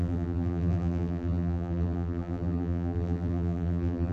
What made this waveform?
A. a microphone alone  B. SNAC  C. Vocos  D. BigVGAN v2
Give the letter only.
D